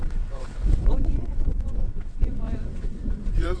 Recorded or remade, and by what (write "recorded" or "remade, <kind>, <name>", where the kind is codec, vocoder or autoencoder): remade, vocoder, WaveNeXt